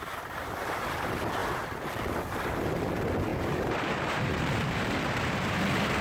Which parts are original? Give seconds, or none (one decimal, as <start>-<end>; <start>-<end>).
0.0-3.3; 5.6-6.0

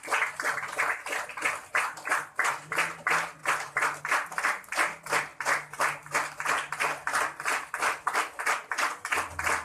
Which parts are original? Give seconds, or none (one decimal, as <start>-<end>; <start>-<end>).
0.0-9.6

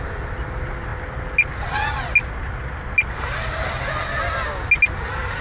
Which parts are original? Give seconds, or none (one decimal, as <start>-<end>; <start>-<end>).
0.0-5.4

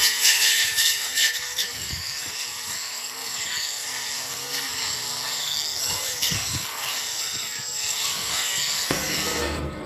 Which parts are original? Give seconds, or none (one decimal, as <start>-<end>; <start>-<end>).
none

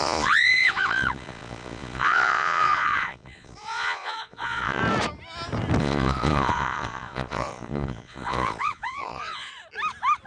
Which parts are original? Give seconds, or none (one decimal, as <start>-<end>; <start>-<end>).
4.8-5.8; 9.5-10.3